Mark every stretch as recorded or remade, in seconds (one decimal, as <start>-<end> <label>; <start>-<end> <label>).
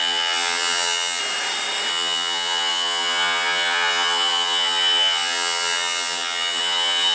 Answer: 0.0-1.2 remade; 1.2-1.9 recorded; 1.9-7.1 remade